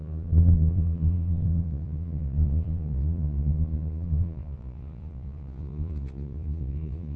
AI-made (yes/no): yes